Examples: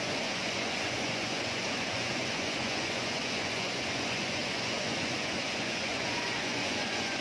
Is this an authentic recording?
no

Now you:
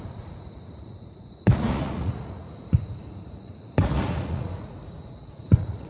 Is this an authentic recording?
no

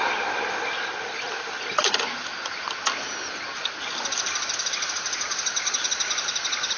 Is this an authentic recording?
yes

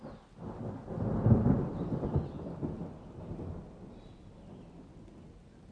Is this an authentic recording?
yes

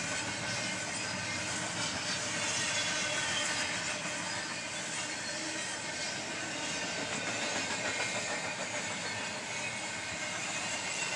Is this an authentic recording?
yes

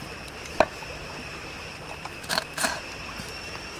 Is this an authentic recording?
yes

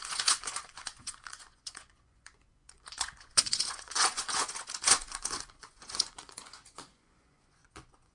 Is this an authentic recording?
no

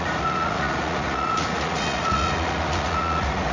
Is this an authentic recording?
no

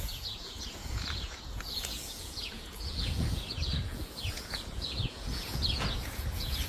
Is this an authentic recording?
no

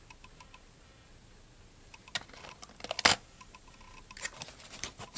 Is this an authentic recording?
yes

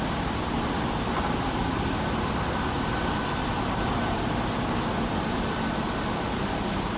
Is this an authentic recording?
yes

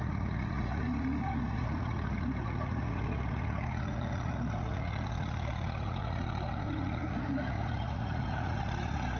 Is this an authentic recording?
no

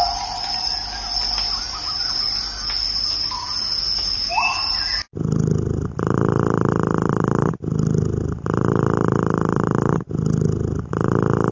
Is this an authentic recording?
yes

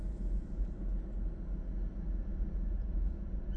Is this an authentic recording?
yes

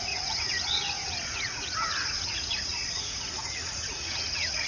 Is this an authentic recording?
no